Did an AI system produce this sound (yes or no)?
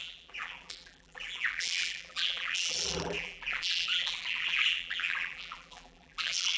yes